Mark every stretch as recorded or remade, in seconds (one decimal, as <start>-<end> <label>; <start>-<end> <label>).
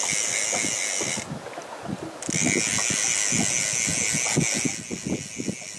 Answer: 0.0-5.8 recorded